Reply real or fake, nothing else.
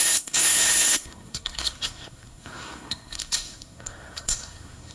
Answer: fake